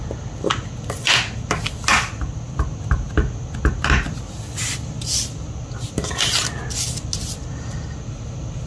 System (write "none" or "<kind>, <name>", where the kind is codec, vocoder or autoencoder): none